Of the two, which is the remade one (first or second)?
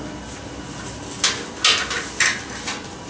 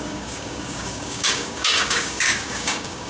second